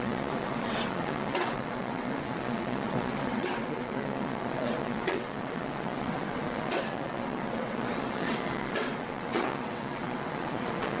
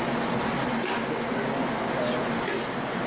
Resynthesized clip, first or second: first